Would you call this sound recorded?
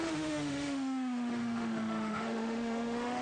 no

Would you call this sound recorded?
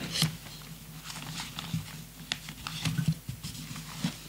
yes